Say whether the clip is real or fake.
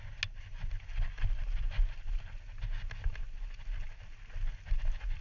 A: real